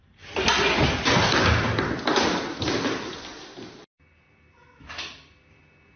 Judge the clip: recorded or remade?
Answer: recorded